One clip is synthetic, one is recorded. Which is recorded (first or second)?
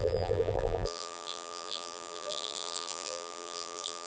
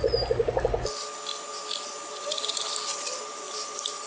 second